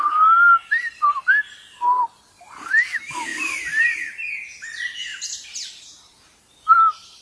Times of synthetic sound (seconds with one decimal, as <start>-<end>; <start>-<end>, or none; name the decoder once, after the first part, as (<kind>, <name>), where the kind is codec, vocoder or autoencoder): 3.3-4.0 (vocoder, BigVGAN v2); 5.1-6.4